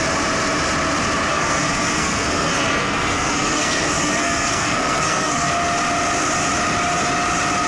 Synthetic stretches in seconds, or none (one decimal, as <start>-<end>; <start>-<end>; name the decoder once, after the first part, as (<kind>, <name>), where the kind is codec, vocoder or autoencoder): 1.3-5.5 (codec, SNAC)